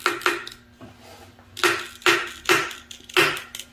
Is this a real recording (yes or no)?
yes